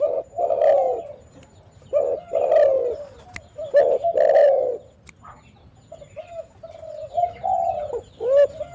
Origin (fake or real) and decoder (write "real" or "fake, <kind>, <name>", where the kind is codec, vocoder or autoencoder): real